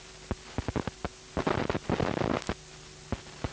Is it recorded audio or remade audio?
recorded